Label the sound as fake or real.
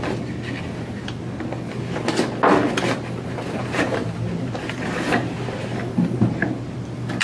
real